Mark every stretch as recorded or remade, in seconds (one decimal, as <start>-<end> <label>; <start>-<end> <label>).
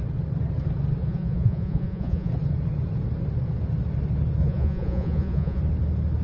0.0-1.0 recorded; 1.0-2.3 remade; 2.3-4.4 recorded; 4.4-5.6 remade; 5.6-6.2 recorded